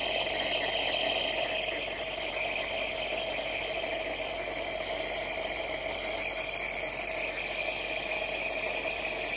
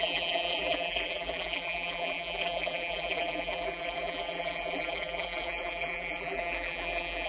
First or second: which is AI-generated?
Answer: second